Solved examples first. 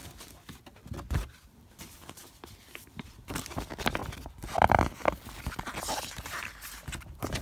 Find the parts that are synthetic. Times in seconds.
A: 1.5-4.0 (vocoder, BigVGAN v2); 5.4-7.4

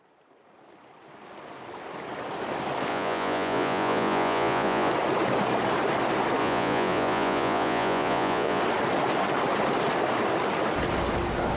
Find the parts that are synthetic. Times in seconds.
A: 2.9-4.9 (vocoder, Vocos); 6.4-8.6

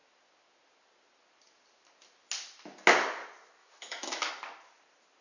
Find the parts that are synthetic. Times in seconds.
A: 3.6-4.3 (autoencoder, DAC-VAE)

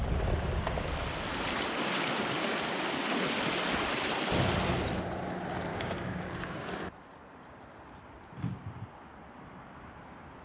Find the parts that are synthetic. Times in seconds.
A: 5.7-6.7 (codec, DAC)

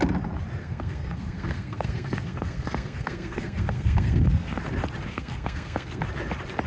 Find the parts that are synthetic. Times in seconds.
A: 0.6-4.6 (codec, SNAC); 5.1-6.0